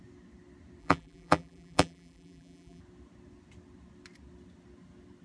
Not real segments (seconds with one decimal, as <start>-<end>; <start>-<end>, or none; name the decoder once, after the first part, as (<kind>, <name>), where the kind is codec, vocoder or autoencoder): 0.8-2.8 (vocoder, BigVGAN v2)